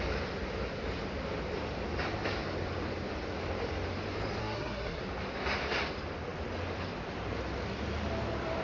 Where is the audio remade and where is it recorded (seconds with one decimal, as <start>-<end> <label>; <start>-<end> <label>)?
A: 0.0-4.4 recorded; 4.4-5.0 remade; 5.0-8.6 recorded